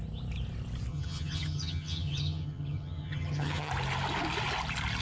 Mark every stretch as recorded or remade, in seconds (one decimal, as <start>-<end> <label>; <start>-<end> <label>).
0.0-0.9 recorded; 0.9-3.7 remade; 3.7-5.0 recorded